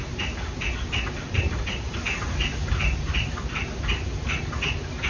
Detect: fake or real real